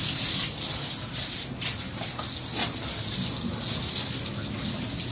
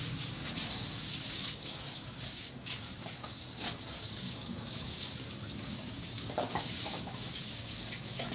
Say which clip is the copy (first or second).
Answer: second